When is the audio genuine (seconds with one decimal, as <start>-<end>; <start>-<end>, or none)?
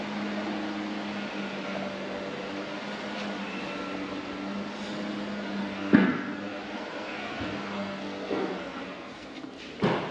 0.0-5.6; 9.6-10.1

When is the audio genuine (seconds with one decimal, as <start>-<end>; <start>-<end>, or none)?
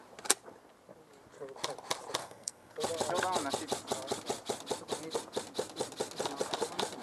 0.0-2.2; 2.8-7.0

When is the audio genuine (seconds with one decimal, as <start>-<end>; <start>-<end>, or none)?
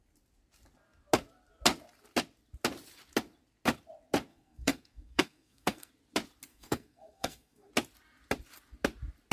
0.0-4.3; 5.9-6.5; 7.7-9.3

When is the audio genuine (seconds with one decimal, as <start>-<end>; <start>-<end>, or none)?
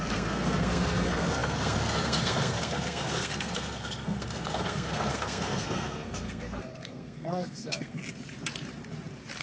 8.0-9.4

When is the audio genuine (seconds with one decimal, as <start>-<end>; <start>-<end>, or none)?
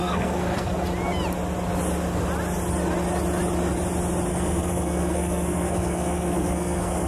0.7-4.3